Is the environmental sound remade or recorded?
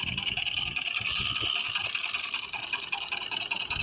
recorded